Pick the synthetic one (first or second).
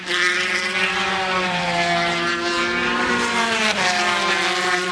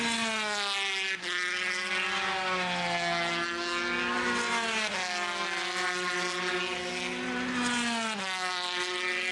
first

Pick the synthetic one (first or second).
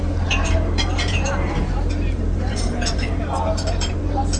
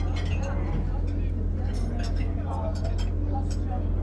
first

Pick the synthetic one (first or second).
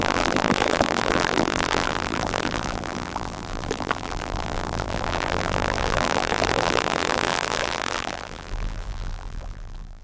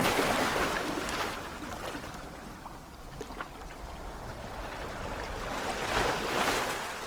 first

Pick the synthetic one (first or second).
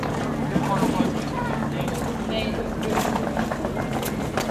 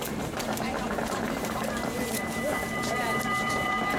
second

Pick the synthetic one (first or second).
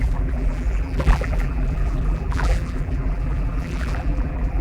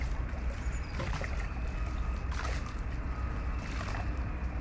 first